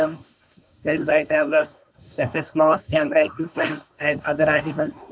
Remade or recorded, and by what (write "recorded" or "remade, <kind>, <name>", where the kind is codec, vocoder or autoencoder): remade, codec, SNAC